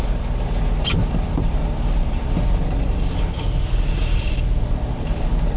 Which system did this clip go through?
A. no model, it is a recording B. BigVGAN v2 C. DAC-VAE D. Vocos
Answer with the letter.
B